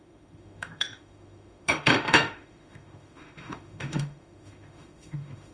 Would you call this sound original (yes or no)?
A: no